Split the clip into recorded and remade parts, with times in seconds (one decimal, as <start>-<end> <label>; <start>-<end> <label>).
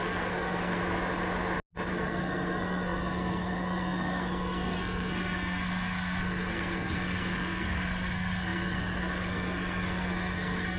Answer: 0.0-0.8 remade; 0.8-1.9 recorded; 1.9-10.8 remade